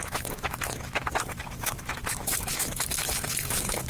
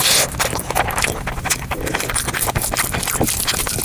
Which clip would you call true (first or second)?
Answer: second